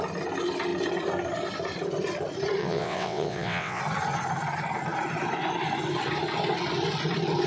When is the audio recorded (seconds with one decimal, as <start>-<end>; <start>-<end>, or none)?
0.0-2.6; 3.8-7.5